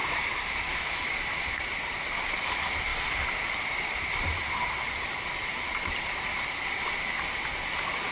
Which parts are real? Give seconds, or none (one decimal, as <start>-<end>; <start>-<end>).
1.6-8.1